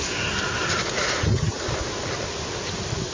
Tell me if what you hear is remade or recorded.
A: recorded